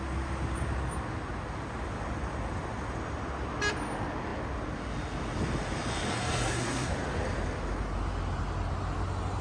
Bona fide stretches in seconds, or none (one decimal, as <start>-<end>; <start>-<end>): 0.0-6.1; 6.9-9.4